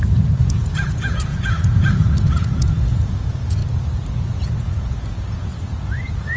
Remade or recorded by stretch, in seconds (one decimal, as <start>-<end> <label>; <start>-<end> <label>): 0.0-3.6 remade; 3.6-4.4 recorded; 4.4-5.5 remade; 5.5-6.0 recorded; 6.0-6.4 remade